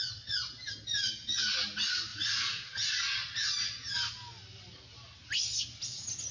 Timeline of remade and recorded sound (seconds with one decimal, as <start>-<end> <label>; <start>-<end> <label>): 0.0-2.1 recorded; 2.1-2.9 remade; 2.9-6.3 recorded